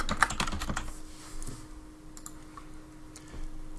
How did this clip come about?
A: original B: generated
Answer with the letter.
A